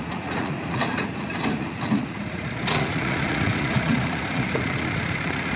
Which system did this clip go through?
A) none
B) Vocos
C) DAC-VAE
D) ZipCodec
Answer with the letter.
B